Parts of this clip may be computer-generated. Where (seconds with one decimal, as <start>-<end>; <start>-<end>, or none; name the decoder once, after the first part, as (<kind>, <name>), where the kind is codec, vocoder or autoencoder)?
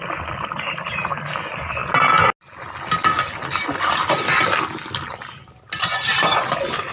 none